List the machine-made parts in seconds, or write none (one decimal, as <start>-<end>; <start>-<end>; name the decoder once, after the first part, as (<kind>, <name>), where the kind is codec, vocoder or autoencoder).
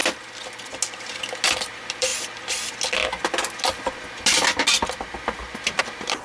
none